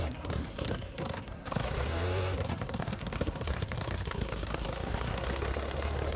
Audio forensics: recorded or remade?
remade